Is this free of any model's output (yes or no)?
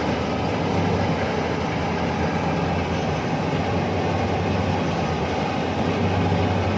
yes